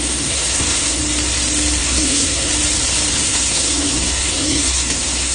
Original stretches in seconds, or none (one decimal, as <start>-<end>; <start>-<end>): 1.0-1.8; 2.5-3.1